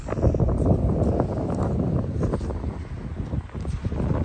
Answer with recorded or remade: recorded